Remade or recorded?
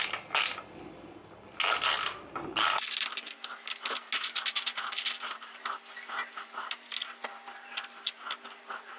recorded